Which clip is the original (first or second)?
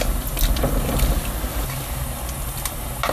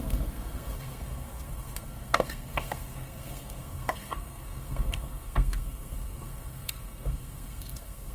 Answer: first